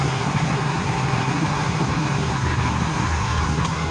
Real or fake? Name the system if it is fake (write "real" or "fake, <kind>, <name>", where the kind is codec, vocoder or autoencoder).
fake, codec, SNAC